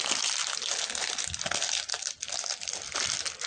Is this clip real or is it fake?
real